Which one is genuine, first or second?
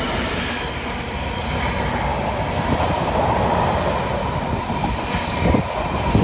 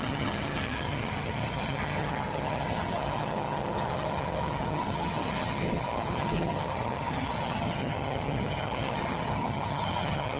first